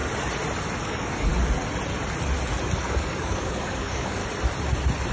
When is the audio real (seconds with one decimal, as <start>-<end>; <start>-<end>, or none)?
0.0-0.8; 1.3-2.8; 4.2-5.1